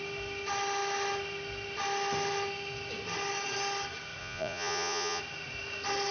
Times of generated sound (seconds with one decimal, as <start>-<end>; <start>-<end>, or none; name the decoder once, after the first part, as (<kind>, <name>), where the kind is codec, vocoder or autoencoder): 4.2-5.2 (vocoder, Vocos)